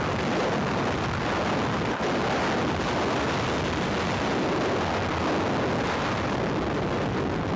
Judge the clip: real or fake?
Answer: real